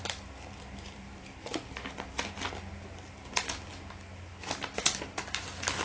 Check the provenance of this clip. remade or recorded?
recorded